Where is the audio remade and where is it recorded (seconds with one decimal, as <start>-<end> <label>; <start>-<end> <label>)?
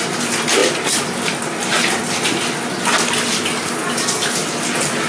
0.0-5.1 recorded